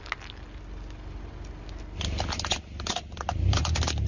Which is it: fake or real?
real